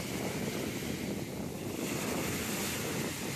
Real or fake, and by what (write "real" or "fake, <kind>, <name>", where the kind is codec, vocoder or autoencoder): real